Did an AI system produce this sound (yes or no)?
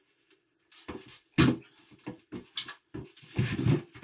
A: no